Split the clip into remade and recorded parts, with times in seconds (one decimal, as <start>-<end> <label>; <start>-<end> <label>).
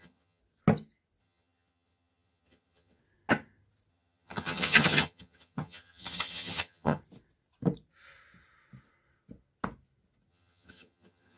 0.0-0.4 remade; 0.4-1.2 recorded; 1.2-3.0 remade; 3.0-3.9 recorded; 3.9-7.0 remade; 7.0-10.3 recorded; 10.3-11.4 remade